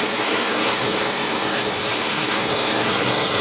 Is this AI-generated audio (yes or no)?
yes